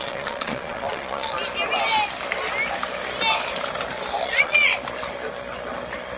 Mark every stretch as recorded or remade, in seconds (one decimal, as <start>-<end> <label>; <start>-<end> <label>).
0.0-1.4 remade; 1.4-4.2 recorded; 4.2-4.7 remade; 4.7-6.2 recorded